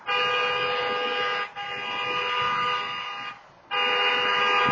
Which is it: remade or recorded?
recorded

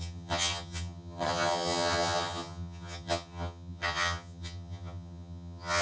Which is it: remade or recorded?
remade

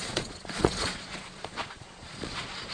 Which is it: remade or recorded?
remade